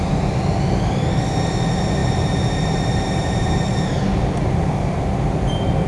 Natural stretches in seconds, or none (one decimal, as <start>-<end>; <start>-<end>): 0.0-5.9